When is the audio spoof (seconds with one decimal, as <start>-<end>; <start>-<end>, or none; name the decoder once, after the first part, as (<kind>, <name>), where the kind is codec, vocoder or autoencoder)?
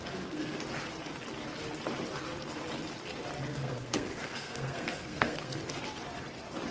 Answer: 0.0-0.6 (codec, SNAC); 3.5-5.6